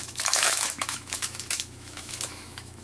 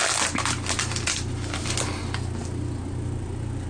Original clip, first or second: second